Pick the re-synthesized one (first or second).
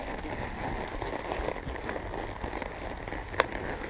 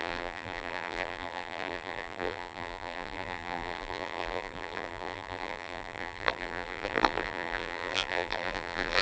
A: second